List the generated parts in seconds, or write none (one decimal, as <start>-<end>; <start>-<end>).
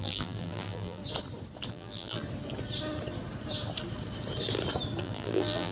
0.0-1.0; 1.7-2.2; 5.0-5.7